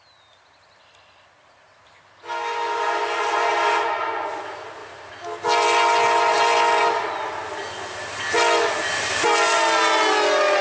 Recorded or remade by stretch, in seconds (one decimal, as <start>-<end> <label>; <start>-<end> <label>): 0.0-10.6 recorded